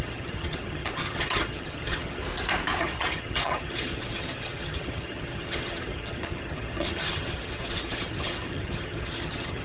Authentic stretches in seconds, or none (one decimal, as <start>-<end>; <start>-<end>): 2.2-2.8